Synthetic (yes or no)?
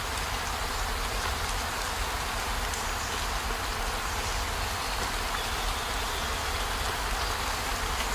no